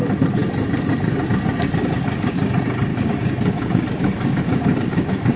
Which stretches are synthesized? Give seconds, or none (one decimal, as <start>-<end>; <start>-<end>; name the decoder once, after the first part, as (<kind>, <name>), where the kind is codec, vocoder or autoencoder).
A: 2.9-5.4 (codec, DAC)